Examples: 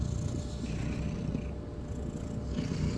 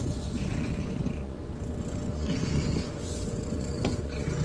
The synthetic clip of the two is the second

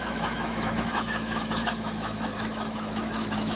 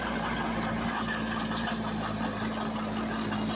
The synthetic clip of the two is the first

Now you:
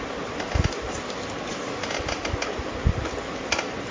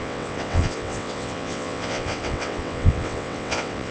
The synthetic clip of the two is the second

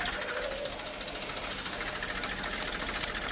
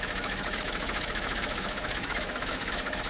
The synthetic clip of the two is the second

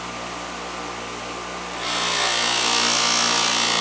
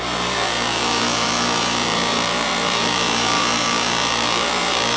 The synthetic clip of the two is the second